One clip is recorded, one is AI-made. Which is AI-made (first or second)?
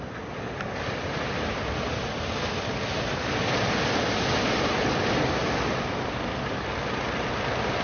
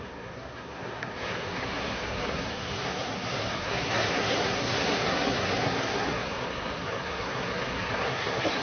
second